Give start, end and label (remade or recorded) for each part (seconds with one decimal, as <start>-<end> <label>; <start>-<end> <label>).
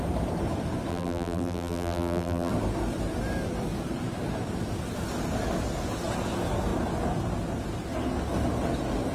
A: 0.0-0.9 recorded; 0.9-2.5 remade; 2.5-9.1 recorded